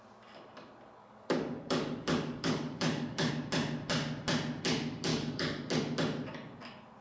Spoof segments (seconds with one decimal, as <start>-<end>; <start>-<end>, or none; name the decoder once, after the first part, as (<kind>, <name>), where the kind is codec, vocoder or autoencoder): 1.0-3.3 (codec, DAC); 5.1-5.6